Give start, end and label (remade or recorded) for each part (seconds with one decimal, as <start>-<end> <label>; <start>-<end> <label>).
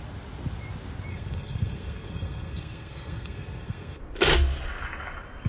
0.0-1.1 recorded; 1.1-4.0 remade; 4.0-5.5 recorded